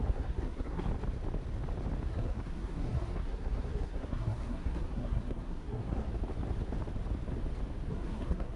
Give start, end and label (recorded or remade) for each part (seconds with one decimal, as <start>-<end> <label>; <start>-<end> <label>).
0.0-0.9 remade; 0.9-2.1 recorded; 2.1-6.1 remade; 6.1-7.9 recorded; 7.9-8.6 remade